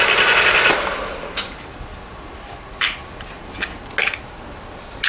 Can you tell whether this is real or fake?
real